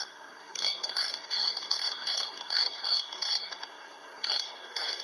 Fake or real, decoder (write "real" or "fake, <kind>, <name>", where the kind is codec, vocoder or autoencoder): fake, codec, SNAC